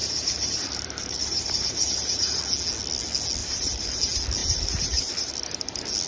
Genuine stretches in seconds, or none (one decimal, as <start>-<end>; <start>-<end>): 2.4-3.4; 4.0-4.4; 5.3-6.1